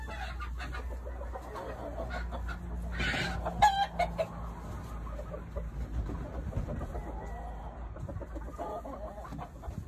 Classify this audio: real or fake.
real